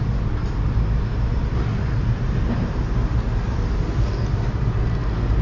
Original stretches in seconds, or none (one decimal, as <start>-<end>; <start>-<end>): 0.0-5.4